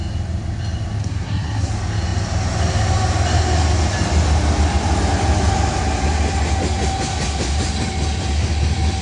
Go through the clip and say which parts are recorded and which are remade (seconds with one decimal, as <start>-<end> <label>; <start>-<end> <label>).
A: 0.0-1.0 recorded; 1.0-1.7 remade; 1.7-9.0 recorded